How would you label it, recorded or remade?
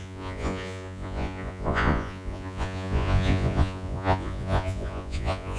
remade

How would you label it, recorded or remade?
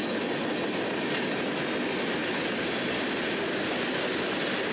recorded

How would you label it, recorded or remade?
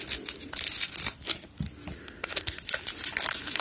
recorded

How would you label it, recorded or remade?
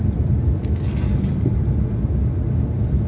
recorded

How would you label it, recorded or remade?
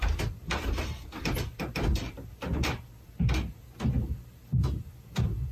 recorded